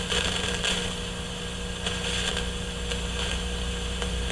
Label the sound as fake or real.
real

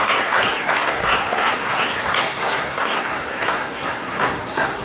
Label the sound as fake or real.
fake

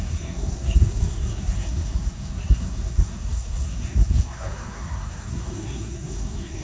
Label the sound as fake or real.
fake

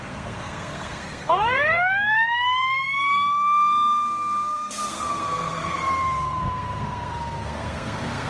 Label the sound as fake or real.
fake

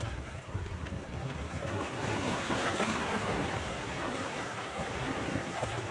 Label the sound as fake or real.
fake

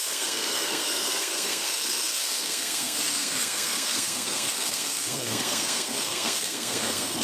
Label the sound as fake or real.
fake